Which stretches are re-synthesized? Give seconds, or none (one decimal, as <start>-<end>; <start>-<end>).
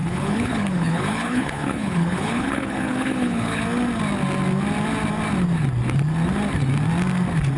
0.0-3.6